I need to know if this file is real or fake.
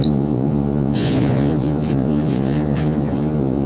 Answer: fake